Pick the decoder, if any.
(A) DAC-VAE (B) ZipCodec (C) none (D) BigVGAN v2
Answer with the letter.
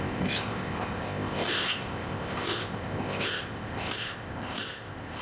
B